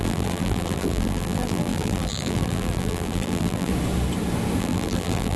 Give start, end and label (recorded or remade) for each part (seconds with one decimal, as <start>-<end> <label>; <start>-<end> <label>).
0.0-3.7 remade; 3.7-4.6 recorded; 4.6-5.4 remade